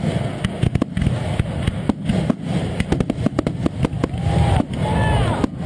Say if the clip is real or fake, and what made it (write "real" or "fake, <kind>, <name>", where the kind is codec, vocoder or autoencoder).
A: real